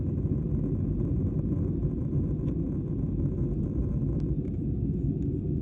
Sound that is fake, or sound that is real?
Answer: real